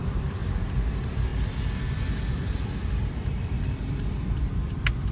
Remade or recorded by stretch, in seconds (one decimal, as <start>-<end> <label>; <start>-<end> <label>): 0.0-0.4 remade; 0.4-0.9 recorded; 0.9-5.1 remade